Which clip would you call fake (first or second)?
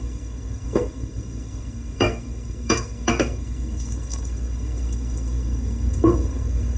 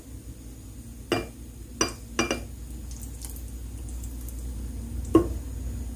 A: first